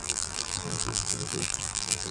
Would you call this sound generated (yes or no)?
yes